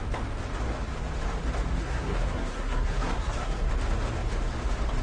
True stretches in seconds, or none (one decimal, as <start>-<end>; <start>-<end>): 0.0-1.8; 3.7-5.0